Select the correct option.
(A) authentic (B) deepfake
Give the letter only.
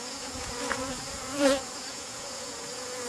B